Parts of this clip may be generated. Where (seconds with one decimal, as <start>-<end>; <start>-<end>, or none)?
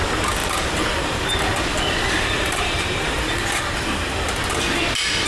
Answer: 0.4-3.6